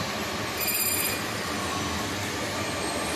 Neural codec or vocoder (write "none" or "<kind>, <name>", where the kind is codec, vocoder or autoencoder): none